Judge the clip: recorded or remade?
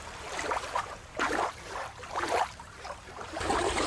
remade